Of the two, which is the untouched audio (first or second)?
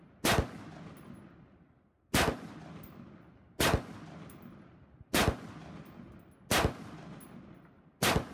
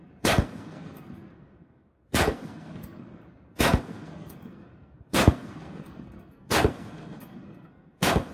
first